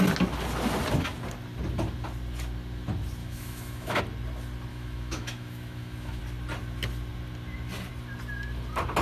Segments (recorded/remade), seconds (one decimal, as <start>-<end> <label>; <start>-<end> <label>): 0.0-3.2 recorded; 3.2-4.0 remade; 4.0-4.7 recorded; 4.7-6.2 remade; 6.2-9.0 recorded